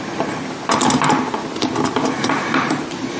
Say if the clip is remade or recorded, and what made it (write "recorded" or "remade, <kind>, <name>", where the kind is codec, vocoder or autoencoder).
recorded